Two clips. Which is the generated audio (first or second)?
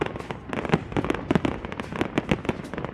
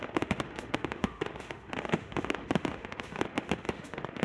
second